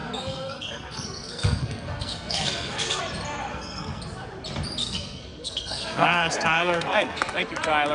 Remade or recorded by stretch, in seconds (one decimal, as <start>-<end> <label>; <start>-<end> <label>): 0.0-3.0 remade; 3.0-3.5 recorded; 3.5-4.0 remade; 4.0-4.8 recorded; 4.8-7.4 remade; 7.4-7.9 recorded